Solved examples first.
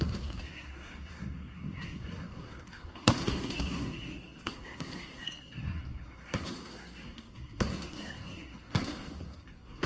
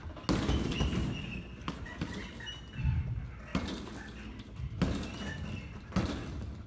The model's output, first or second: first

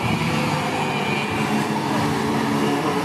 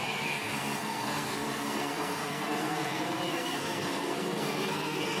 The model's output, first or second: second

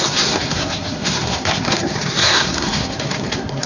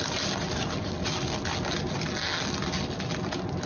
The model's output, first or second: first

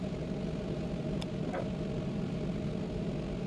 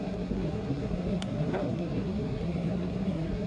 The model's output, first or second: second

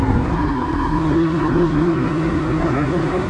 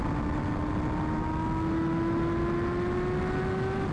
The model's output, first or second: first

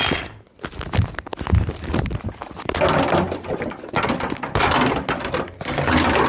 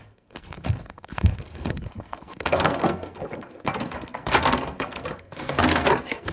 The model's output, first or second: second